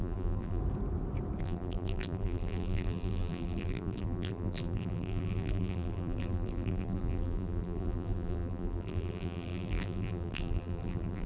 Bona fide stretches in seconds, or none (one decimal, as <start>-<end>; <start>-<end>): 0.6-1.4